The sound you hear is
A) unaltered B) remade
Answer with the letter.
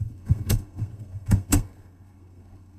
B